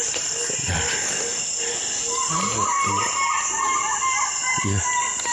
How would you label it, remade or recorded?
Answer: recorded